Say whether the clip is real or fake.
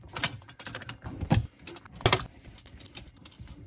real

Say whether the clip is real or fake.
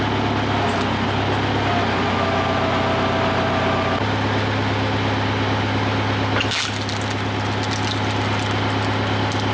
real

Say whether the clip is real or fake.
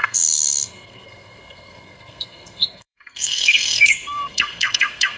fake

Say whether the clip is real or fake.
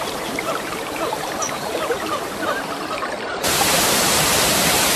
fake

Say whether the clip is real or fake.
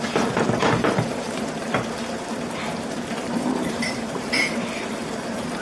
fake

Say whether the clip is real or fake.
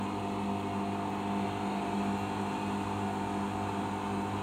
real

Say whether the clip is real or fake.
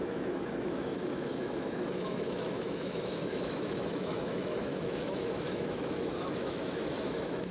fake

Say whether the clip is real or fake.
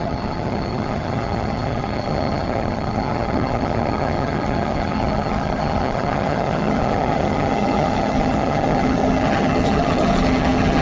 fake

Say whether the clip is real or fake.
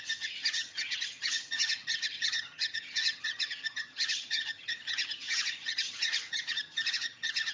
fake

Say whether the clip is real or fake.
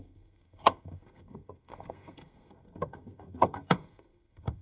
fake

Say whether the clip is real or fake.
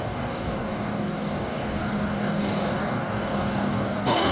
fake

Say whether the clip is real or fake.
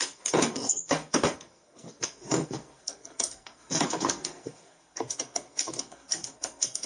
fake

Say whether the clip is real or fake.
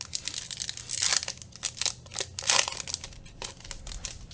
real